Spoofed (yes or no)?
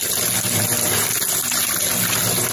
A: no